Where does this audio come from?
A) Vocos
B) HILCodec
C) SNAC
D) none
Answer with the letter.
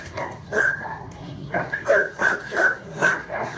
C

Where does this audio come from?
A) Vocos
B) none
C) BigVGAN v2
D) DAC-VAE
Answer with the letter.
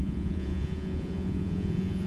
A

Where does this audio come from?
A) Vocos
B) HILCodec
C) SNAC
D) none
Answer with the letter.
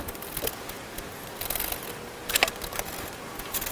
D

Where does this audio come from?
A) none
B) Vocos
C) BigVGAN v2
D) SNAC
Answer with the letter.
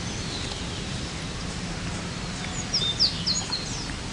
A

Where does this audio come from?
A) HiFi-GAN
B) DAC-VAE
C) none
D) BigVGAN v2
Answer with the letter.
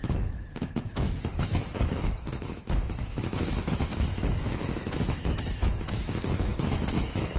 B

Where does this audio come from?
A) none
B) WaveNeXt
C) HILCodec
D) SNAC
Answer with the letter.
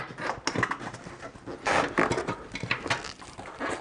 A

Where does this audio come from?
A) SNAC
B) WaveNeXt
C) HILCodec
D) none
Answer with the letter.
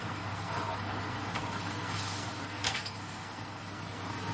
A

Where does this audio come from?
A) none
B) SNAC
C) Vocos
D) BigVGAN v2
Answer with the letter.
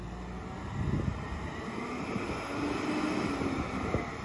A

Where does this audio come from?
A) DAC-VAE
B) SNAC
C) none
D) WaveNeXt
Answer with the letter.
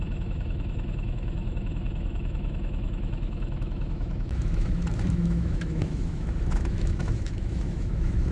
A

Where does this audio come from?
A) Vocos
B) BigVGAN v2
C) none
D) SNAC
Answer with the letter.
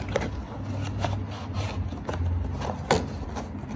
C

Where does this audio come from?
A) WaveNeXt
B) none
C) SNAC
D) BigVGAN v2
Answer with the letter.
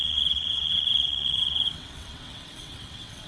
A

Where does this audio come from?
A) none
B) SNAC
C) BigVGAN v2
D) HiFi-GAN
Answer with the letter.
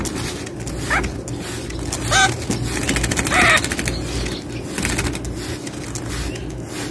A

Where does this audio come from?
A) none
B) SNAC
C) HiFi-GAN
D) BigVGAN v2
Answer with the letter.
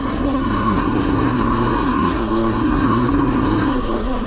B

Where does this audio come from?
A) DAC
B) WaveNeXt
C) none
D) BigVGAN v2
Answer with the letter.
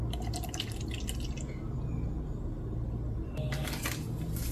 C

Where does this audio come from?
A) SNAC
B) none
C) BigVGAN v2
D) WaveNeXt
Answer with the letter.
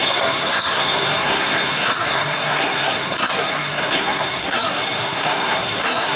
A